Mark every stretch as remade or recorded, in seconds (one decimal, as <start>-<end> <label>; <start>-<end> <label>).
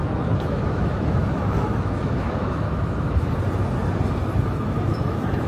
0.0-3.3 remade; 3.3-4.2 recorded; 4.2-5.5 remade